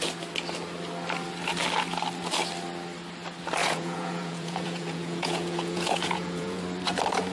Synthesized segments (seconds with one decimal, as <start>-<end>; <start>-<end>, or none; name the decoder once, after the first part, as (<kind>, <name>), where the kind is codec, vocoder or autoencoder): 3.6-6.6 (vocoder, Vocos)